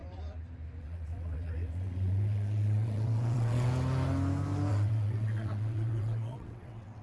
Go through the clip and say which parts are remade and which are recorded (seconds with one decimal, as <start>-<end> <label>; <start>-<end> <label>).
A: 0.0-0.8 recorded; 0.8-3.7 remade; 3.7-4.7 recorded; 4.7-7.0 remade